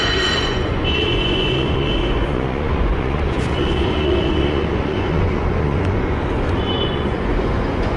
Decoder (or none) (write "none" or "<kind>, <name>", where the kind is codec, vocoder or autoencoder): vocoder, Vocos